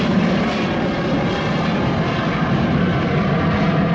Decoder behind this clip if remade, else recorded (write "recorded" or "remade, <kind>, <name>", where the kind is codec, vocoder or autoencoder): recorded